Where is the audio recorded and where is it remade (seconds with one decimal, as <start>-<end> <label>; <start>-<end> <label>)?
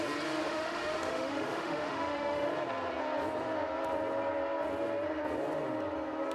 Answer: 0.0-0.4 recorded; 0.4-2.5 remade; 2.5-6.3 recorded